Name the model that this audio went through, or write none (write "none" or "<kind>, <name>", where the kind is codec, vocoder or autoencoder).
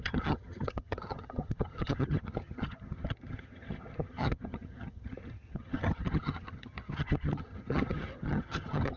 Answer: vocoder, HiFi-GAN